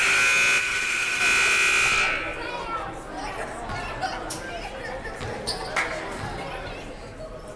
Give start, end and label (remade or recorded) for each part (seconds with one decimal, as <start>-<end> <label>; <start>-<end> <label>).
0.0-0.6 recorded; 0.6-1.2 remade; 1.2-7.6 recorded